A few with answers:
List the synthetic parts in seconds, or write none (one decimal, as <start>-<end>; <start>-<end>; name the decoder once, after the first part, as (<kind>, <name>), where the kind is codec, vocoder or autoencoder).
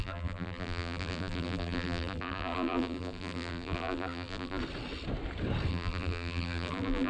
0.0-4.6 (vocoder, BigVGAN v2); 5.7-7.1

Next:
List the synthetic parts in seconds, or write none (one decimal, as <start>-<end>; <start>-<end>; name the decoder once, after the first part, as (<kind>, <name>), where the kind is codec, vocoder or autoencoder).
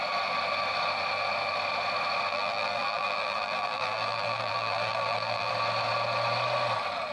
2.3-5.5 (vocoder, BigVGAN v2)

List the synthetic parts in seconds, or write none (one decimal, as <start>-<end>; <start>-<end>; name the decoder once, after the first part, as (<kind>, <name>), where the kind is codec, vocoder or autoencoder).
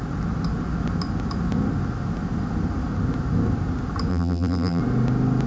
4.1-4.8 (vocoder, BigVGAN v2)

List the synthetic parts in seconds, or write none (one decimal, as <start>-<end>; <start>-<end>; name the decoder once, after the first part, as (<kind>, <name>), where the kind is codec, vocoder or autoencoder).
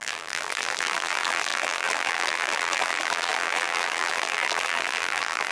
0.0-5.5 (vocoder, BigVGAN v2)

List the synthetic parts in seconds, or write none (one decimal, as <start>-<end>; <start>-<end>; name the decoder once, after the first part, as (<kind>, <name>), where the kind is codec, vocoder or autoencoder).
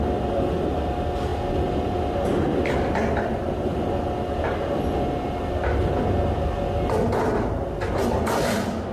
none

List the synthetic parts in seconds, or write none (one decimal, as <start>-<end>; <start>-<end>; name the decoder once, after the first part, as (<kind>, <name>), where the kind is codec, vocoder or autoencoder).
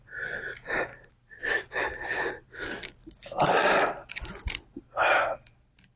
0.9-4.5 (vocoder, BigVGAN v2)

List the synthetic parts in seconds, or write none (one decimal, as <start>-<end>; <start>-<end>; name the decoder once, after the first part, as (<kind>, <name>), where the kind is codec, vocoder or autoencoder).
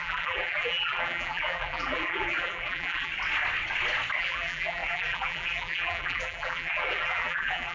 0.0-3.1 (vocoder, BigVGAN v2); 4.2-7.7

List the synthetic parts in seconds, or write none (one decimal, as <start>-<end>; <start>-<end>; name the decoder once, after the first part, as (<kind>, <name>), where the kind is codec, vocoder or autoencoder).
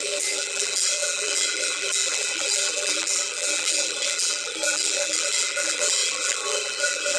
0.0-7.2 (vocoder, BigVGAN v2)